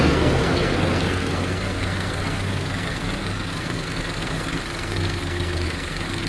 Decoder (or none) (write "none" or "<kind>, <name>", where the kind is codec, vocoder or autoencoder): codec, SNAC